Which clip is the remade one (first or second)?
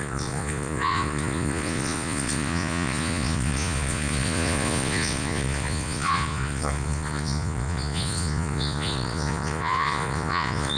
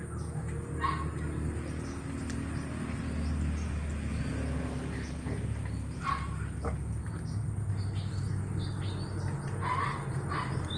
first